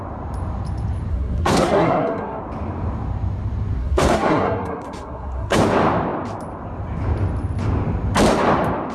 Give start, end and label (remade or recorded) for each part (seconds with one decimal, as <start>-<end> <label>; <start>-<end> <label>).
0.0-1.1 recorded; 1.1-2.4 remade; 2.4-3.8 recorded; 3.8-5.6 remade; 5.6-8.9 recorded